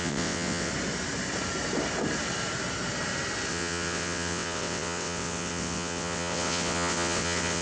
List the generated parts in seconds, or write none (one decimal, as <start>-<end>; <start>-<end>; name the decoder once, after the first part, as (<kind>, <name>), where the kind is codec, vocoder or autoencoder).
0.0-0.7 (vocoder, WaveNeXt); 3.5-7.6